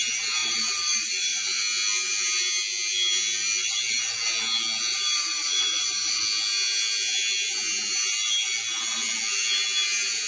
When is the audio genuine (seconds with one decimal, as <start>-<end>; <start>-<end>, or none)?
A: 0.0-0.4; 1.6-4.9; 6.2-10.3